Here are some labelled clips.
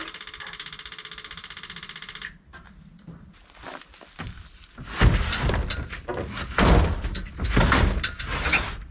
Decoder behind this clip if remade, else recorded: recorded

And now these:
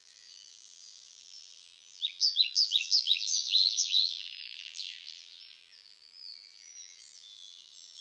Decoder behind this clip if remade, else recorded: remade, vocoder, BigVGAN v2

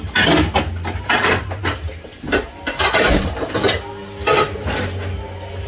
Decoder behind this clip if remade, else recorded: recorded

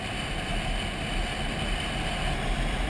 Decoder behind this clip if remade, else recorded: recorded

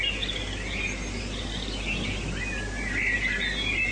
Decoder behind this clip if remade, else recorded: recorded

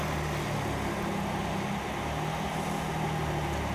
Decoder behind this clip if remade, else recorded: recorded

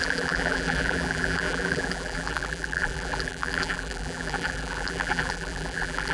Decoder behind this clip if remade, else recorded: remade, vocoder, BigVGAN v2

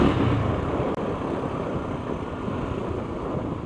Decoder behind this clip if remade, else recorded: recorded